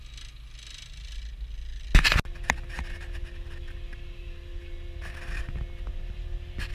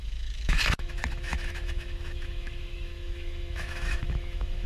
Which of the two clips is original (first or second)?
first